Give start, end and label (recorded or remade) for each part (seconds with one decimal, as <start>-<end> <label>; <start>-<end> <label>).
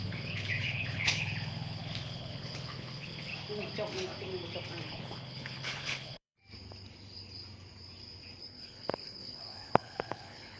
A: 0.0-3.3 remade; 3.3-4.8 recorded; 4.8-6.4 remade; 6.4-8.4 recorded; 8.4-10.6 remade